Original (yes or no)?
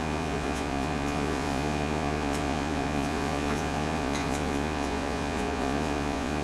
no